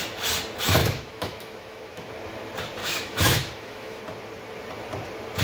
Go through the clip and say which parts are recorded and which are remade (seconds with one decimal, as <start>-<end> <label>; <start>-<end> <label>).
0.0-0.8 recorded; 0.8-2.1 remade; 2.1-2.8 recorded; 2.8-4.0 remade; 4.0-5.4 recorded